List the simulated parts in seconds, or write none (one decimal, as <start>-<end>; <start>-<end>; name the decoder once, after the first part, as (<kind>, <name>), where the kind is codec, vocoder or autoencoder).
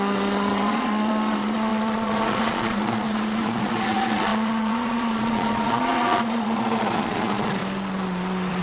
0.0-7.6 (vocoder, Vocos)